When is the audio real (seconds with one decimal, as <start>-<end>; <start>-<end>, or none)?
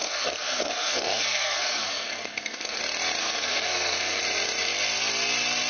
2.8-3.2; 4.2-5.7